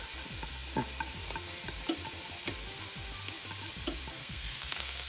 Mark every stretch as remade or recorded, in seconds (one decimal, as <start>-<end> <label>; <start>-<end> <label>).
0.0-4.2 recorded; 4.2-5.1 remade